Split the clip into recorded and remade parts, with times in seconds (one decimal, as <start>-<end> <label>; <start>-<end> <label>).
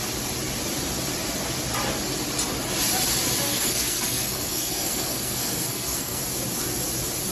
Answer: 0.0-3.5 recorded; 3.5-6.2 remade; 6.2-7.3 recorded